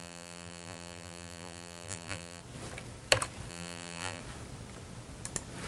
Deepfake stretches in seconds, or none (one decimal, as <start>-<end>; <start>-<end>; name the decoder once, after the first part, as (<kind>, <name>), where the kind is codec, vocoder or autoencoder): 0.0-2.4 (vocoder, BigVGAN v2); 3.5-4.2